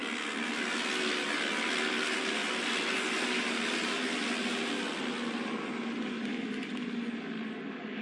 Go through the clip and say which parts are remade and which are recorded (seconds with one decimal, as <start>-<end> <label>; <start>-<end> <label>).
0.0-8.0 recorded